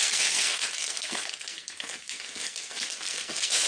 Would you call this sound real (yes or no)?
no